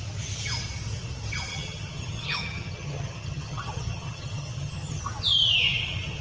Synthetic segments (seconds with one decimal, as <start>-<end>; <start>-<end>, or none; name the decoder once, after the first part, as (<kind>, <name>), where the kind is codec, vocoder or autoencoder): 1.5-5.0 (vocoder, HiFi-GAN)